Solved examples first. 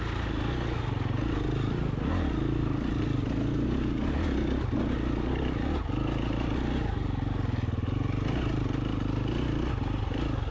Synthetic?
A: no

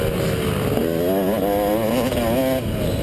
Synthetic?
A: no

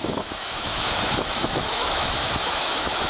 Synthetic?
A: yes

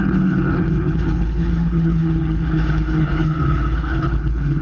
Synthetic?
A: yes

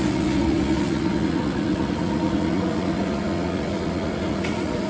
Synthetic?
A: yes